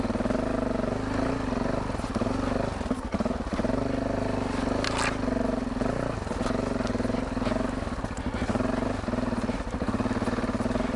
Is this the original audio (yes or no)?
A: yes